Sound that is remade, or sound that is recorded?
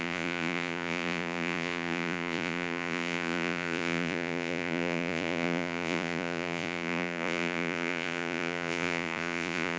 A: remade